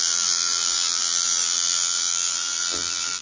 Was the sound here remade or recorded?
remade